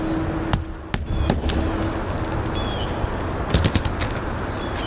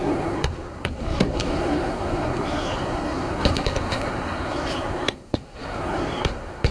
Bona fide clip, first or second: first